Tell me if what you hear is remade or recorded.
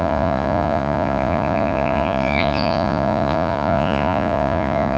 remade